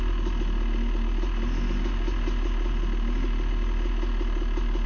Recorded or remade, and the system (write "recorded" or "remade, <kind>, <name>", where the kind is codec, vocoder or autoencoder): recorded